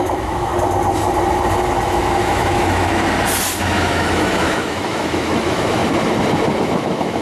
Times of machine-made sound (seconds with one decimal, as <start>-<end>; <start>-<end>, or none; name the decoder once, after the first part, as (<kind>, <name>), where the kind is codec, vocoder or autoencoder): 0.0-0.5 (autoencoder, DAC-VAE); 2.2-3.0; 3.6-5.8; 6.6-7.2